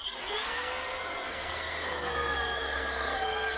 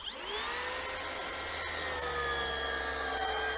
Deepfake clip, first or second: first